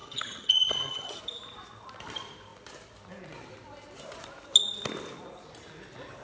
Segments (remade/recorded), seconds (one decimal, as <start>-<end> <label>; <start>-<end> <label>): 0.0-1.2 remade; 1.2-6.2 recorded